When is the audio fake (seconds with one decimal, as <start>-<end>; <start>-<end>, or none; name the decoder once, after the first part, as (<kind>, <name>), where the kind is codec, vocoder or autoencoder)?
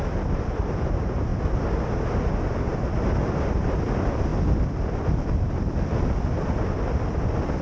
0.0-1.3 (vocoder, BigVGAN v2); 3.4-4.3